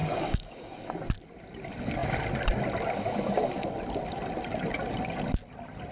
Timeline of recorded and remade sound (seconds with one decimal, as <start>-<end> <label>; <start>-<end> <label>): 0.0-0.7 remade; 0.7-5.9 recorded